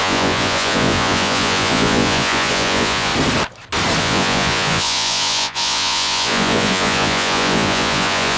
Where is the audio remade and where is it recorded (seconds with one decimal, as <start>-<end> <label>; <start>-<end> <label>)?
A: 0.0-3.1 remade; 3.1-4.0 recorded; 4.0-8.4 remade